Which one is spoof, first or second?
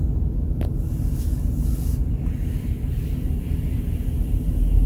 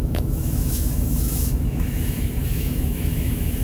second